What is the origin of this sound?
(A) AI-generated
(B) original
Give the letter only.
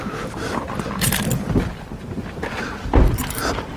B